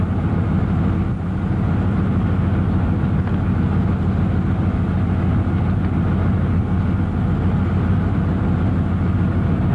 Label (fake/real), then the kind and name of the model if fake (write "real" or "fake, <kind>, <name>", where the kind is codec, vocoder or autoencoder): real